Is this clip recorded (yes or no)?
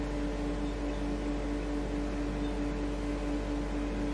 yes